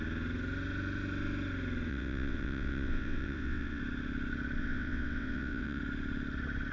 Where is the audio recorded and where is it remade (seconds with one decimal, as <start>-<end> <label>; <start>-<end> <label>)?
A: 0.0-1.9 recorded; 1.9-3.8 remade; 3.8-4.6 recorded; 4.6-5.8 remade; 5.8-6.7 recorded